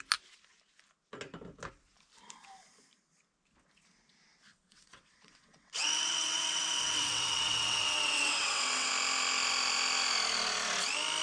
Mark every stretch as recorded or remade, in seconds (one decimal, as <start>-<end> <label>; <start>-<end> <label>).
0.0-4.5 recorded; 4.5-8.9 remade; 8.9-11.2 recorded